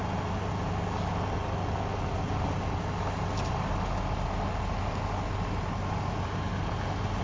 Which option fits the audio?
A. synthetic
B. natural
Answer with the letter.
B